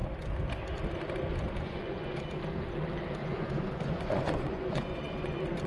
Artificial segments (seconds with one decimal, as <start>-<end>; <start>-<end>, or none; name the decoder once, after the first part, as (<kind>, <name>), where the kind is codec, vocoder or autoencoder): 1.5-2.2 (vocoder, Vocos); 3.2-5.7